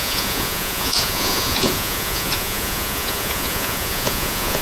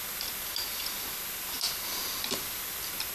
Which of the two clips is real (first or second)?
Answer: second